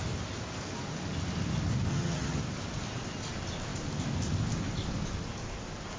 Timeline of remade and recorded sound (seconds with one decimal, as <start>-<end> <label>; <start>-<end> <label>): 0.0-1.9 recorded; 1.9-2.4 remade; 2.4-6.0 recorded